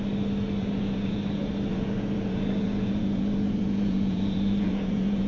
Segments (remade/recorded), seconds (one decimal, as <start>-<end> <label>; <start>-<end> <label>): 0.0-0.6 recorded; 0.6-1.2 remade; 1.2-1.7 recorded; 1.7-5.3 remade